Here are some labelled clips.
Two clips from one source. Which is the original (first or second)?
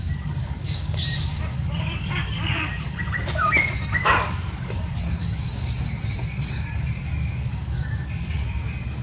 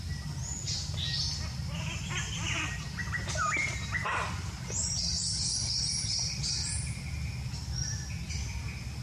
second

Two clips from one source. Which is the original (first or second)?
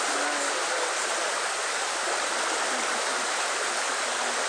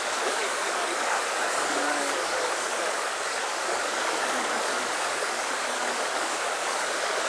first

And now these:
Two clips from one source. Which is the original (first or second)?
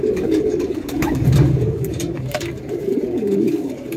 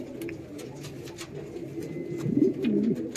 second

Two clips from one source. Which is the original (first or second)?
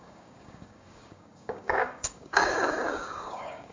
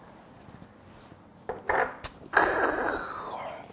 second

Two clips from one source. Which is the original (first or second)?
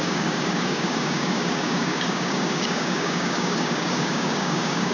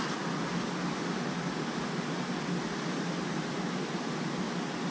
second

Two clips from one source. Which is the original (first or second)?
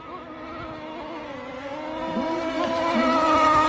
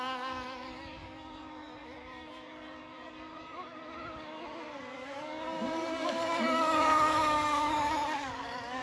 first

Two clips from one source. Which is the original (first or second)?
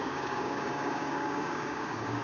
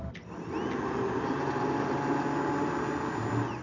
second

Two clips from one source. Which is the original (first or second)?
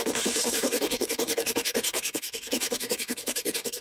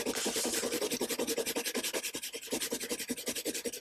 second